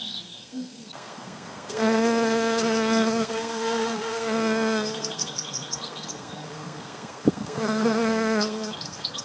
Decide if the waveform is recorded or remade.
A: remade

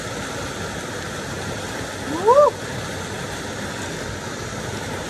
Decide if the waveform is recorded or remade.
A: recorded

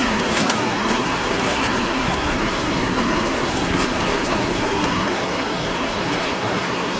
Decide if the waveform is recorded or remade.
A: remade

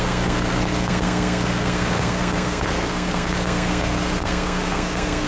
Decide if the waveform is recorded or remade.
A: remade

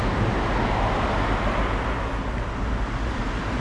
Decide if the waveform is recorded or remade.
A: recorded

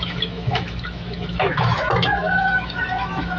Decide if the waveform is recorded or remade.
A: remade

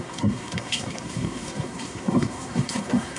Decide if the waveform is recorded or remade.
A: remade